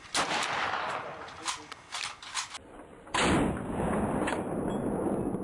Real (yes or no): yes